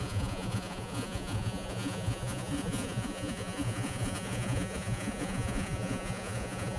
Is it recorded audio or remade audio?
remade